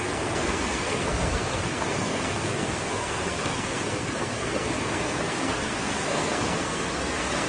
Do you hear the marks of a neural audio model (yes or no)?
yes